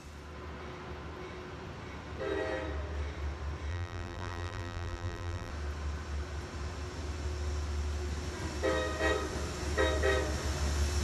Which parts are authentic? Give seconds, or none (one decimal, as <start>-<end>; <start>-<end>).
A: 0.0-3.7; 5.5-11.0